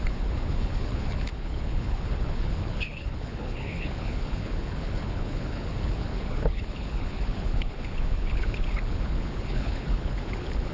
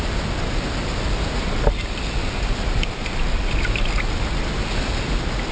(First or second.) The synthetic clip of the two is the first